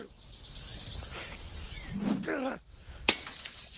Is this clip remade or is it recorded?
remade